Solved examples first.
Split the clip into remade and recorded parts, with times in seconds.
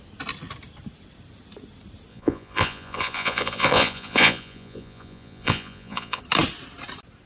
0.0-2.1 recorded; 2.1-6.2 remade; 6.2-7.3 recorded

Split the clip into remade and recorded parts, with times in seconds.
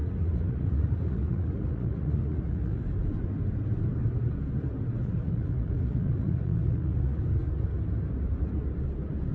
0.0-2.8 remade; 2.8-5.0 recorded; 5.0-7.2 remade; 7.2-9.3 recorded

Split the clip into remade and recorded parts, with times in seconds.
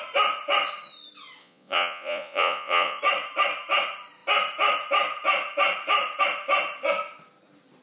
0.0-1.4 recorded; 1.4-3.0 remade; 3.0-7.8 recorded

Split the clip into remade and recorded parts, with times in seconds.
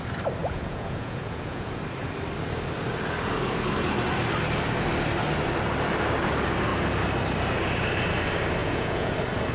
0.0-0.4 recorded; 0.4-1.8 remade; 1.8-8.6 recorded; 8.6-9.1 remade; 9.1-9.5 recorded